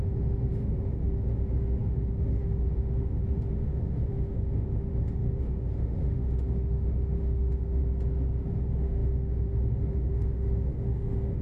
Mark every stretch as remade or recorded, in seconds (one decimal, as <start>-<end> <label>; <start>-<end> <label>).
0.0-7.8 remade; 7.8-8.5 recorded; 8.5-11.4 remade